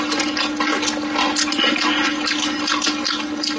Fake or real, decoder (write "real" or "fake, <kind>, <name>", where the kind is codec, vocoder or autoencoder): real